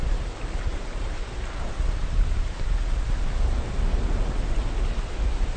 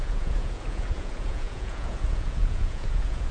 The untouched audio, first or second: first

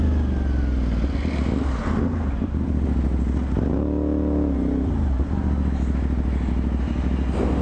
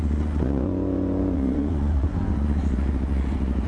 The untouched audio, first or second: first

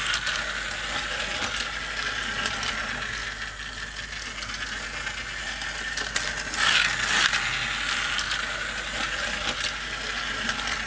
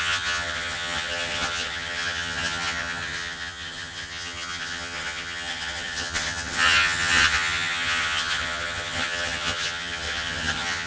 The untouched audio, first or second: first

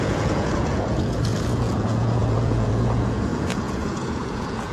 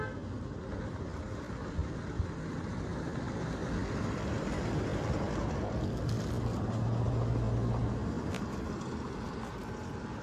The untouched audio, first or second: second